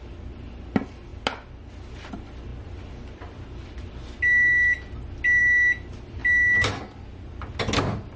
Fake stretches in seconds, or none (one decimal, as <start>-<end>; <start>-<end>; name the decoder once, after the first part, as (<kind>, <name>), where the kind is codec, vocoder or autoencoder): none